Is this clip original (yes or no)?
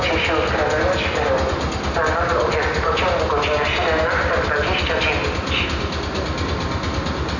yes